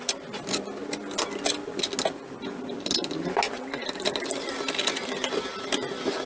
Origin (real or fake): real